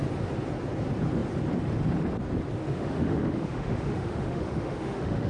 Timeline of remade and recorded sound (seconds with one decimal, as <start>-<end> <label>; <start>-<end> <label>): 0.0-2.6 recorded; 2.6-5.3 remade